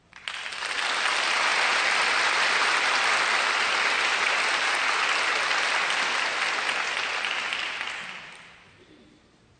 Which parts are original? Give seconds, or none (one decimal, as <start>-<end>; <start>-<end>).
0.0-1.5; 6.0-9.6